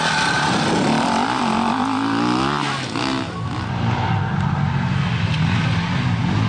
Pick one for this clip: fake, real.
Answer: real